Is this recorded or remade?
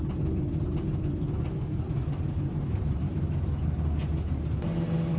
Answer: recorded